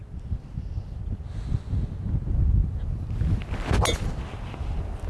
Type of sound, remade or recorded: recorded